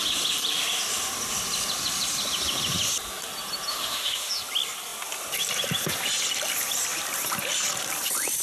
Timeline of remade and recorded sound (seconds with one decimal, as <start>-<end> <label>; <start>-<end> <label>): 0.0-3.7 recorded; 3.7-4.3 remade; 4.3-8.4 recorded